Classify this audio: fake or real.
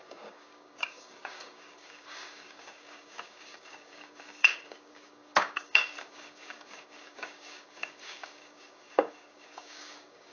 fake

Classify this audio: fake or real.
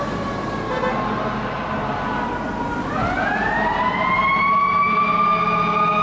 real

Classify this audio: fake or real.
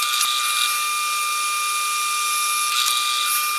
real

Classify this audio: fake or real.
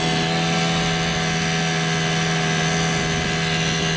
real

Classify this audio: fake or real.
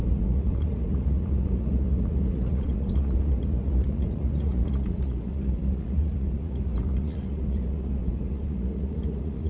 fake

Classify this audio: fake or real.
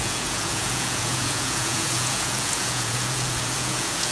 fake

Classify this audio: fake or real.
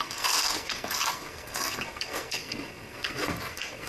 fake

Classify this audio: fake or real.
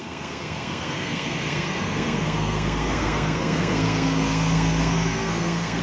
fake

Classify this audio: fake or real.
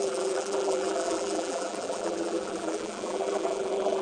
fake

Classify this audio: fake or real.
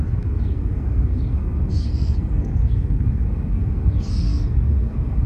fake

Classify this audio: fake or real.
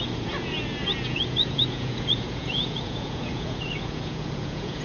fake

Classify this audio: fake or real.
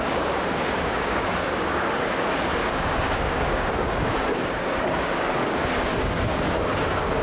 fake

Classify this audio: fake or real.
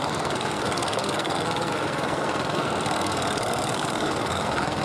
fake